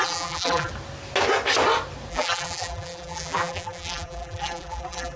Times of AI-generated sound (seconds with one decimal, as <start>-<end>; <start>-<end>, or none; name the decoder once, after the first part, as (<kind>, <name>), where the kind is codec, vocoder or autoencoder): 0.0-0.7 (vocoder, BigVGAN v2); 2.1-5.2